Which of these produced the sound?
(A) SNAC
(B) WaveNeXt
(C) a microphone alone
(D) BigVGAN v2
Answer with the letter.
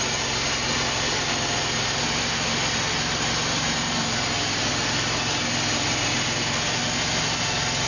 C